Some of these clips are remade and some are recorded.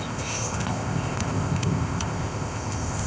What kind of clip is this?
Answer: remade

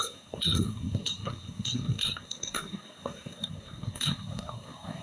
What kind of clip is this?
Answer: remade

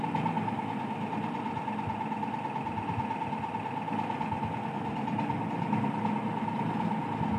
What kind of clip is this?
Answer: recorded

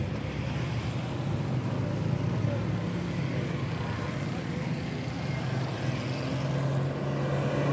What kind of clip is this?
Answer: recorded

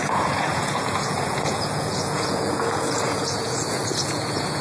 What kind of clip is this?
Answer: remade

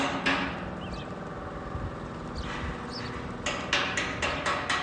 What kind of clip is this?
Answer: recorded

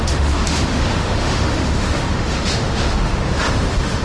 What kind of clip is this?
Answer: remade